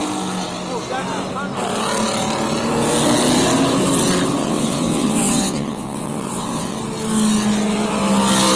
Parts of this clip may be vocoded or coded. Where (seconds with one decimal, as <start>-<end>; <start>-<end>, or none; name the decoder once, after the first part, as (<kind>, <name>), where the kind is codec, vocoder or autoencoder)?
4.4-6.8 (vocoder, WaveNeXt)